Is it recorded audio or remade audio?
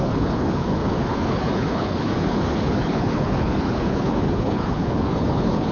remade